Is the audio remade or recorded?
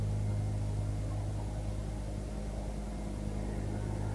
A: recorded